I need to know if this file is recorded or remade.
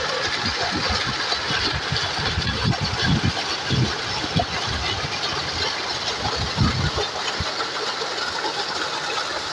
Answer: recorded